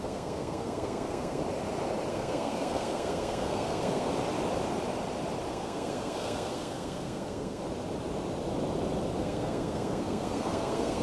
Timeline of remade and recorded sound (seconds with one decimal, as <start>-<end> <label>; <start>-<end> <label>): 0.0-1.4 remade; 1.4-2.1 recorded; 2.1-4.1 remade; 4.1-5.5 recorded; 5.5-7.6 remade; 7.6-9.2 recorded; 9.2-11.0 remade